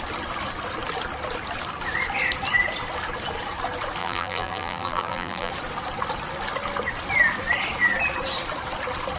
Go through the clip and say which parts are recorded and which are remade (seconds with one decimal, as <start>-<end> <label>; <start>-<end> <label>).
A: 0.0-4.0 recorded; 4.0-5.5 remade; 5.5-9.2 recorded